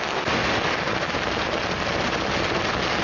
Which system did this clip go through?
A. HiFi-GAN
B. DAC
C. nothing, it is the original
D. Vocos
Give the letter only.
C